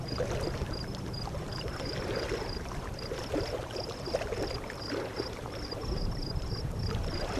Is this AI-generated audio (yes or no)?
yes